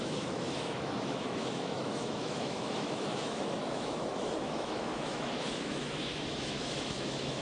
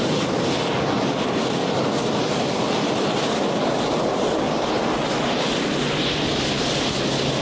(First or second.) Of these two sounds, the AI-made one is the first